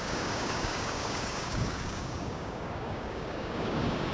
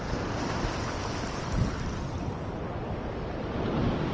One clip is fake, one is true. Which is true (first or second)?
second